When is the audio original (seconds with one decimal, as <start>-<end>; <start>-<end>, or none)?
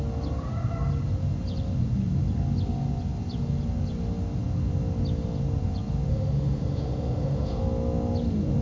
0.0-6.1; 7.6-8.6